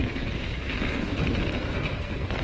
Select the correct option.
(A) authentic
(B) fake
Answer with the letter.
B